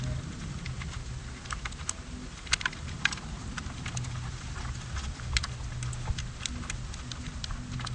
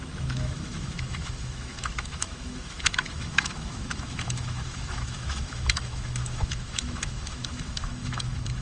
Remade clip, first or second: second